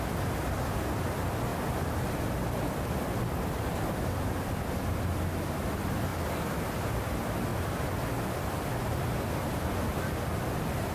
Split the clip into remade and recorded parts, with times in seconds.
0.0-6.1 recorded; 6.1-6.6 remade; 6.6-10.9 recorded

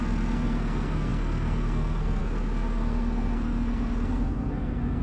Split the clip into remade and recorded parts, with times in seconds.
0.0-5.0 remade

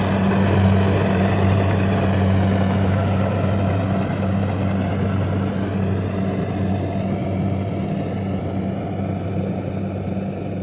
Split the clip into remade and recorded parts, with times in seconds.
0.0-10.6 recorded

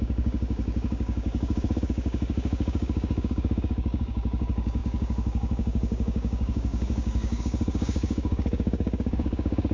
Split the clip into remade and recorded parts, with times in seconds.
0.0-9.7 remade